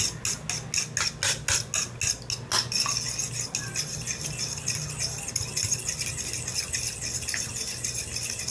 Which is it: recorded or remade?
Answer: recorded